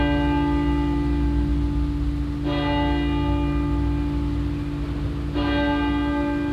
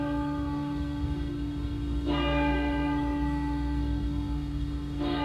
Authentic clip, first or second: first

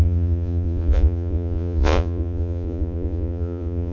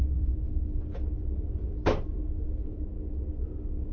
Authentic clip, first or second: second